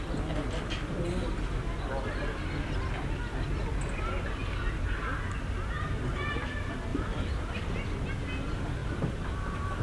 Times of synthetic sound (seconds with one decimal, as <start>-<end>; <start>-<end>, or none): 6.9-7.6; 8.8-9.8